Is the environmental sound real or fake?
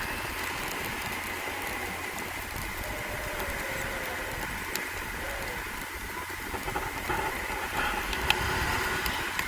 real